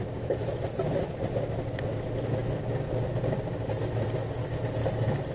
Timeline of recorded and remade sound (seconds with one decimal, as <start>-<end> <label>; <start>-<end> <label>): 0.0-5.3 recorded